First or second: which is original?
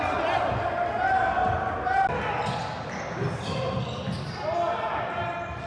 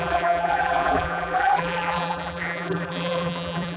first